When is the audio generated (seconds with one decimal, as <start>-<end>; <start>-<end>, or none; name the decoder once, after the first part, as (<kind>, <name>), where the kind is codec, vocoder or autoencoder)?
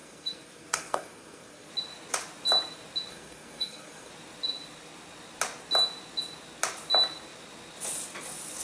0.0-1.7 (codec, SNAC); 3.1-4.1